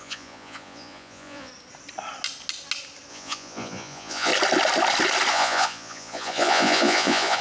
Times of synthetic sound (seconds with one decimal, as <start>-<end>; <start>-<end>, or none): 0.0-1.5; 3.1-4.3; 5.3-7.4